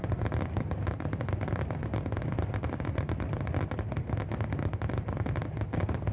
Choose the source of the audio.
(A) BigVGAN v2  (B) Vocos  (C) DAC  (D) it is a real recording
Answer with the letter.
D